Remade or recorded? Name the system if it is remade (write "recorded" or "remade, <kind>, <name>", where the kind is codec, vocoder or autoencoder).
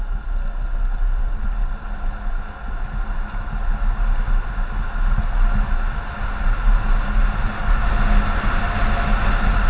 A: recorded